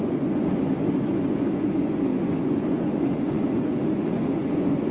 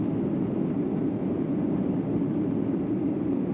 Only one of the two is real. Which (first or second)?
second